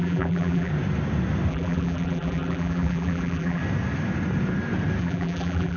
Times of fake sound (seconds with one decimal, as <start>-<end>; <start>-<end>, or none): 0.0-0.7; 1.5-3.6; 5.0-5.8